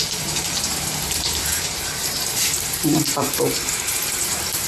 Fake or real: fake